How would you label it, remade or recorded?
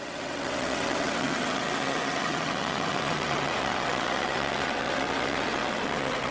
remade